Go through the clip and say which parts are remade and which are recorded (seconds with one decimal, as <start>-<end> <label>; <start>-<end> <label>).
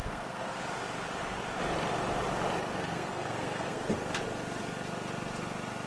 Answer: 0.0-0.6 remade; 0.6-2.7 recorded; 2.7-3.8 remade; 3.8-5.9 recorded